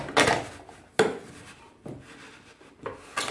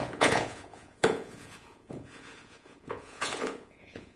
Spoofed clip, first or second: second